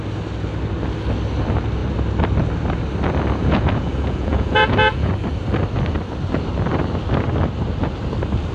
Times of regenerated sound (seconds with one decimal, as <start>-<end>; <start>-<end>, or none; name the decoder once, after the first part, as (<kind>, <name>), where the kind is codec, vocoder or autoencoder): 3.4-5.1 (vocoder, Vocos)